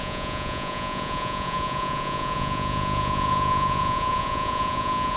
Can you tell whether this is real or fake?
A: fake